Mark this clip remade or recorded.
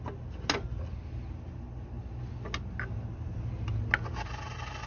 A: recorded